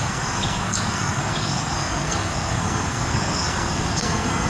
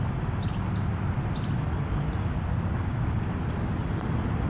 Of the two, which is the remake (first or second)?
first